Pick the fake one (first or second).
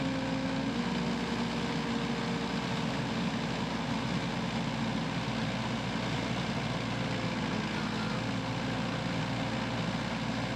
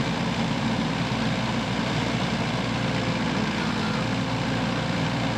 second